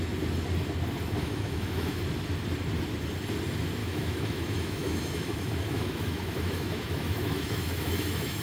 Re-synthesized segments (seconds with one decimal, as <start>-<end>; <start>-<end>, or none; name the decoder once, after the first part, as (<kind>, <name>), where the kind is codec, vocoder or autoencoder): 1.2-2.0 (autoencoder, DAC-VAE); 3.8-8.4